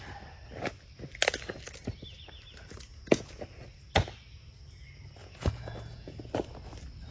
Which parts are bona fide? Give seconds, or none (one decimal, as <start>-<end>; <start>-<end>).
0.0-2.9; 3.4-5.2; 6.3-7.1